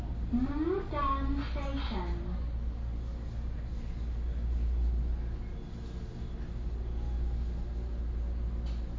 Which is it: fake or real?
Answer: real